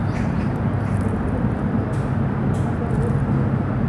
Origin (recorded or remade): recorded